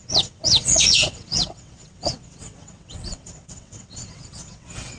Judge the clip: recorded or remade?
remade